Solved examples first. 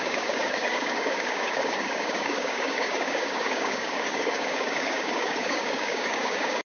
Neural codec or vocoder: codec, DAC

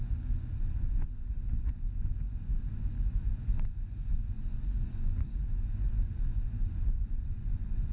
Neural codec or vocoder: vocoder, Vocos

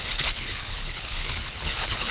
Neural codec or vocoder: codec, HILCodec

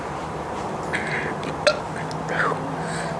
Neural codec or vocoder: none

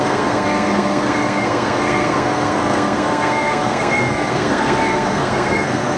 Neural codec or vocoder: codec, SNAC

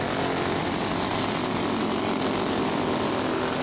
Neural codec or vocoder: none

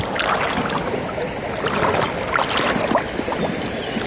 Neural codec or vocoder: none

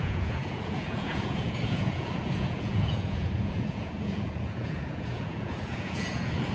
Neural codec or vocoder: vocoder, Vocos